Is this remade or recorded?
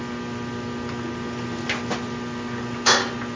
recorded